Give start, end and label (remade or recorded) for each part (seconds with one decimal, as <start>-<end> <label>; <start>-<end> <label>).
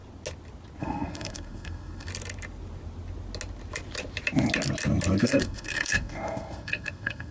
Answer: 0.0-0.8 recorded; 0.8-2.1 remade; 2.1-5.2 recorded; 5.2-7.3 remade